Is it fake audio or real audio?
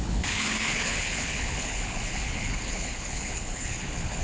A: fake